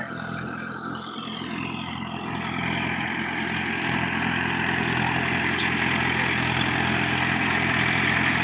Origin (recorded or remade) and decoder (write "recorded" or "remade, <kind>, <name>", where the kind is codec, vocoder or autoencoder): recorded